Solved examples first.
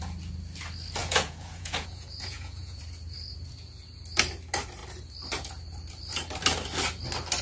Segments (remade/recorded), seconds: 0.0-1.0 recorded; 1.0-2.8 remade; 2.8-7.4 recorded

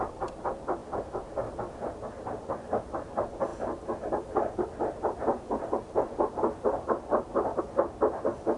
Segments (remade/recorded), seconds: 0.0-8.6 recorded

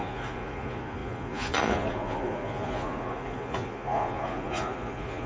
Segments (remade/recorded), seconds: 0.0-5.3 remade

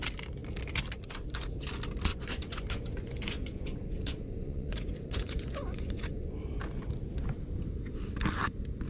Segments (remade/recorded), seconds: 0.0-2.1 recorded; 2.1-6.3 remade; 6.3-8.9 recorded

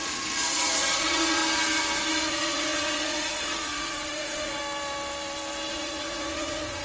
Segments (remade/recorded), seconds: 0.0-1.4 remade; 1.4-2.3 recorded; 2.3-4.6 remade; 4.6-5.7 recorded; 5.7-6.8 remade